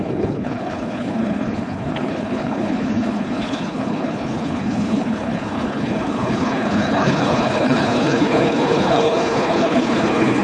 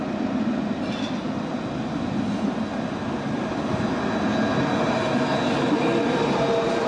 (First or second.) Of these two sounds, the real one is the second